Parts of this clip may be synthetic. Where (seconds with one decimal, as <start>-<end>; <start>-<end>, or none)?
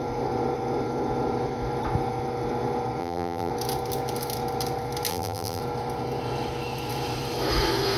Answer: 3.0-3.5; 5.1-5.6